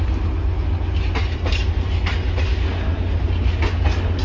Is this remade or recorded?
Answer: recorded